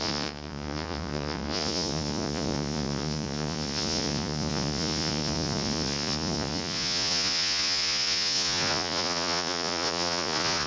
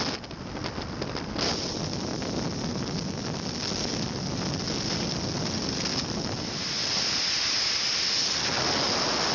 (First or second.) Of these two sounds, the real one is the second